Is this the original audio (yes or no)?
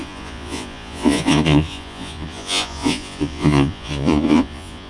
no